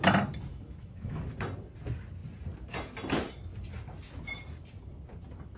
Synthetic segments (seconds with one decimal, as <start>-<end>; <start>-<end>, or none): 0.5-1.2